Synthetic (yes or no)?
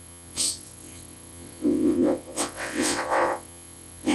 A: yes